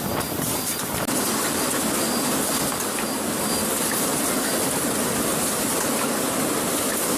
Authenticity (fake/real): real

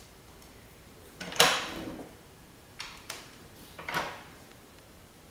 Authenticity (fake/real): fake